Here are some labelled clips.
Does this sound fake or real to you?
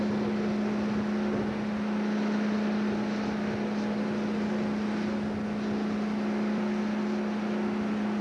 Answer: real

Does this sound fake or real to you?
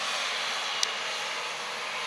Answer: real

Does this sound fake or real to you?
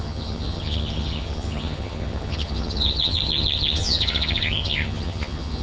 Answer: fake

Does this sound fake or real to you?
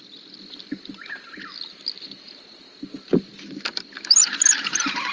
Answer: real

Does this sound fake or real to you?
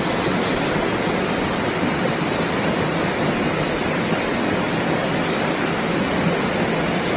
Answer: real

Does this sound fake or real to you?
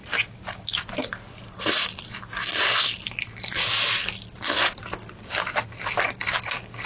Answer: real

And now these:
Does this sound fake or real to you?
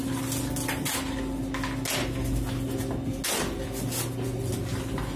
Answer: real